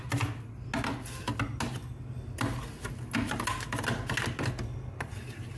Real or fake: real